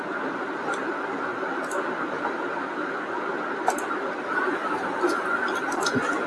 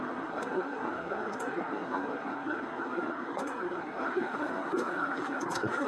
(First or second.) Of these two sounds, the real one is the first